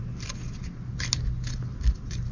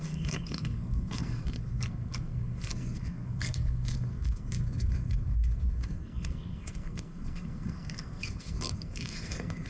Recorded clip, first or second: first